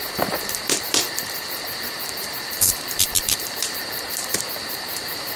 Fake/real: fake